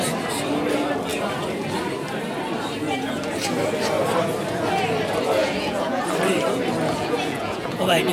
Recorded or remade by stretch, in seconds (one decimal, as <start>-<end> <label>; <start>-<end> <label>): 0.0-5.4 recorded; 5.4-6.0 remade; 6.0-6.9 recorded; 6.9-8.1 remade